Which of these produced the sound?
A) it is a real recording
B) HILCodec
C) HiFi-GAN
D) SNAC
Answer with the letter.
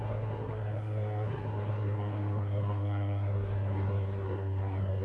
D